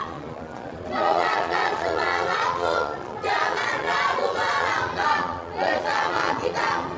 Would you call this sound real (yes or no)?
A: no